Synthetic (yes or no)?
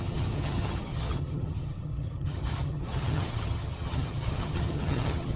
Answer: yes